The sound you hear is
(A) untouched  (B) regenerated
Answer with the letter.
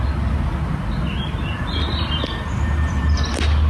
A